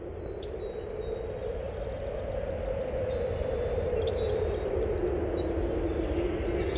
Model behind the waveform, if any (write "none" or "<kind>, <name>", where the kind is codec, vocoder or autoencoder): none